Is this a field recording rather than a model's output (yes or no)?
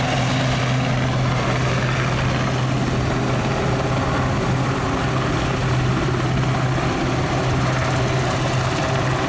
yes